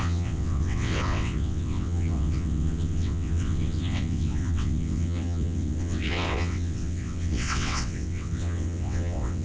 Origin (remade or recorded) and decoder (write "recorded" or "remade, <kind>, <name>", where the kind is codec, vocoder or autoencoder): remade, vocoder, WaveNeXt